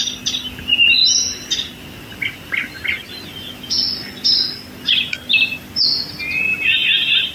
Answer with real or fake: real